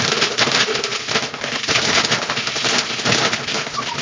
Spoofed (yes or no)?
no